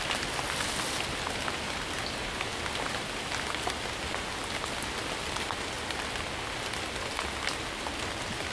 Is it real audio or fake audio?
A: real